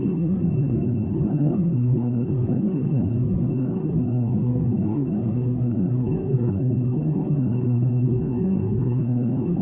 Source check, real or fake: fake